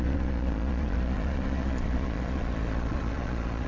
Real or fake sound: fake